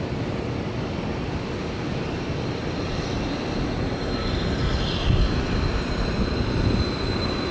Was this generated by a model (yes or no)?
no